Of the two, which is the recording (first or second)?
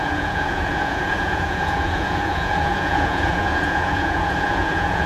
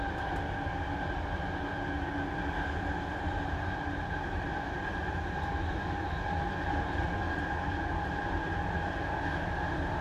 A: second